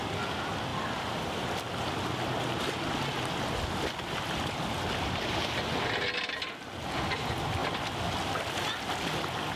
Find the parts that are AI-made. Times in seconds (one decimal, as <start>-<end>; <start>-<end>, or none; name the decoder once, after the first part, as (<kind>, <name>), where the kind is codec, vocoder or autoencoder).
none